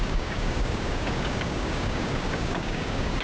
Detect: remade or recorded remade